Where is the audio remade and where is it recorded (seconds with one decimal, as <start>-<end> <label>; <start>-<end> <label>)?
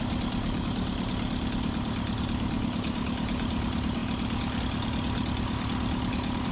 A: 0.0-6.5 recorded